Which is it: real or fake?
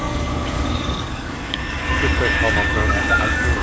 fake